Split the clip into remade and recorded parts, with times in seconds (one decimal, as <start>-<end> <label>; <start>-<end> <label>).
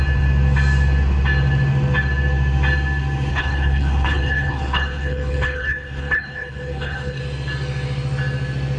0.0-3.3 recorded; 3.3-7.2 remade; 7.2-8.8 recorded